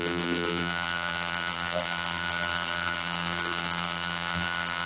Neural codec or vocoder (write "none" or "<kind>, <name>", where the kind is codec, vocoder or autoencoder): vocoder, BigVGAN v2